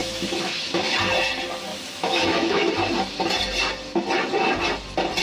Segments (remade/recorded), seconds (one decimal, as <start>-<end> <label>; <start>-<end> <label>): 0.0-0.9 remade; 0.9-1.7 recorded; 1.7-2.7 remade; 2.7-5.2 recorded

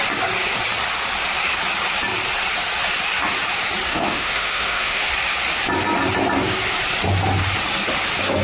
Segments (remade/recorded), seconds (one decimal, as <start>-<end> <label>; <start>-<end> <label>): 0.0-3.9 recorded; 3.9-5.1 remade; 5.1-8.4 recorded

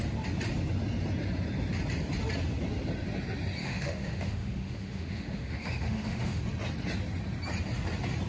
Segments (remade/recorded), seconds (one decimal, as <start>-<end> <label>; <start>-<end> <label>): 0.0-3.6 recorded; 3.6-6.4 remade; 6.4-8.3 recorded

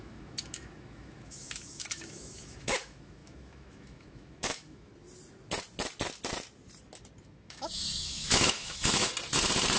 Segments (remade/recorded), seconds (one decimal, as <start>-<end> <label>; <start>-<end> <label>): 0.0-4.9 remade; 4.9-7.2 recorded; 7.2-9.1 remade; 9.1-9.8 recorded